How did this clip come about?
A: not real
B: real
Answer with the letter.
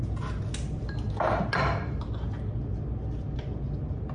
B